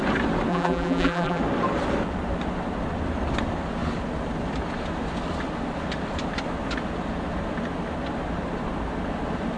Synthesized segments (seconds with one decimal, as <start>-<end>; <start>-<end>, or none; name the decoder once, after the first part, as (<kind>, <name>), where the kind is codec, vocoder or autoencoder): 0.5-1.4 (vocoder, BigVGAN v2)